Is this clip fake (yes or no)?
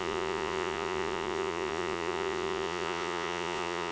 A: yes